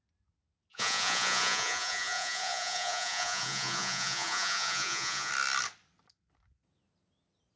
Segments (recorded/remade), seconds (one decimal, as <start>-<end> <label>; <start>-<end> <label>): 0.0-0.7 recorded; 0.7-5.3 remade; 5.3-7.6 recorded